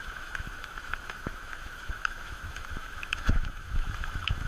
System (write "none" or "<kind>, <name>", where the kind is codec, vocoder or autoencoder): autoencoder, DAC-VAE